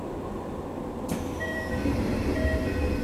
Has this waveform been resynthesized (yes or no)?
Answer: yes